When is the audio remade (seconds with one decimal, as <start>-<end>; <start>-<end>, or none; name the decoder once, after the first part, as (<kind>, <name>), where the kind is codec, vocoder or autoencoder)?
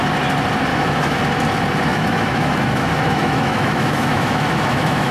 0.7-1.2 (autoencoder, DAC-VAE); 1.9-5.1